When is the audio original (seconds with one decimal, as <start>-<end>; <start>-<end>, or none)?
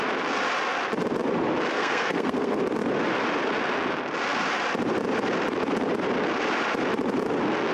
0.0-1.7; 2.6-7.7